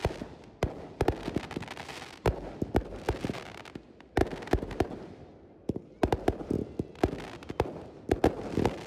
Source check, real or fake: real